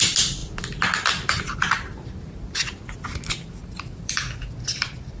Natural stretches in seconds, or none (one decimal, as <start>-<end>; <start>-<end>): 0.0-3.6; 4.2-5.2